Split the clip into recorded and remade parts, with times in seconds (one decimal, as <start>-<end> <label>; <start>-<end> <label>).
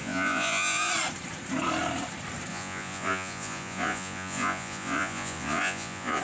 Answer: 0.0-0.9 remade; 0.9-2.5 recorded; 2.5-6.2 remade